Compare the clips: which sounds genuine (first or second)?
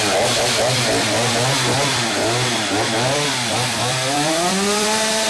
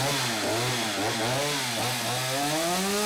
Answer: second